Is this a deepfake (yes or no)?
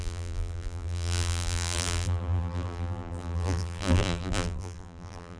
yes